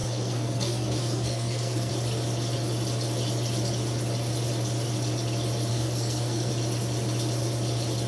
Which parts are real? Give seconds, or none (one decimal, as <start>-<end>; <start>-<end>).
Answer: 1.9-5.7; 6.5-8.1